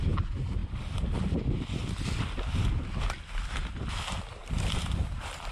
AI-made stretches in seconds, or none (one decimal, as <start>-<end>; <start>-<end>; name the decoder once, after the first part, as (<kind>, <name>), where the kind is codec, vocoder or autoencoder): 4.4-5.5 (vocoder, BigVGAN v2)